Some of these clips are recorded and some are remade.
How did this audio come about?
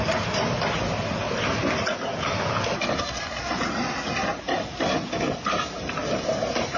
recorded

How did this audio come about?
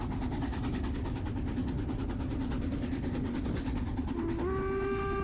recorded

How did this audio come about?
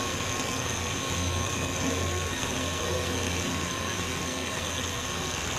remade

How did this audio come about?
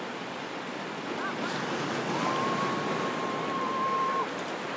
recorded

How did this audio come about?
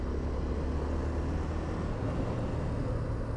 recorded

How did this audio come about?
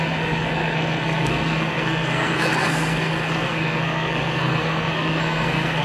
remade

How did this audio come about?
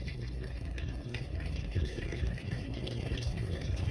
remade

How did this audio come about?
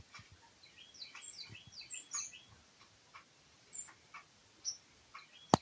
recorded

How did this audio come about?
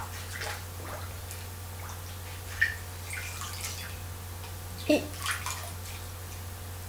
recorded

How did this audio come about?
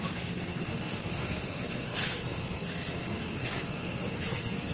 remade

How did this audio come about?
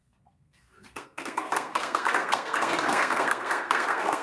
remade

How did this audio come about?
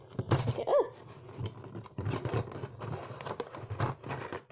recorded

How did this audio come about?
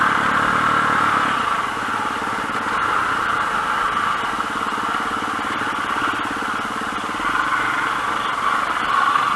recorded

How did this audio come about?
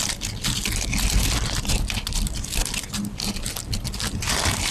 recorded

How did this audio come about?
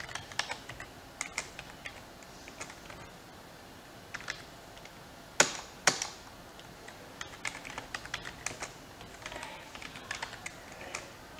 recorded